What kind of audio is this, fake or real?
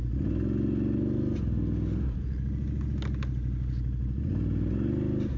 real